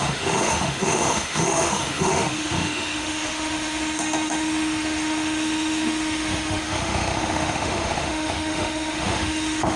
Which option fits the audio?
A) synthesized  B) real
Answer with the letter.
A